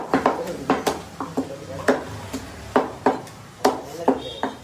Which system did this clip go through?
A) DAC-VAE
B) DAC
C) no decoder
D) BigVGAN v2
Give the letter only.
C